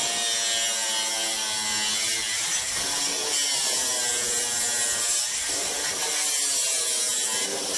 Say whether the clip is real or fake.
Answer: real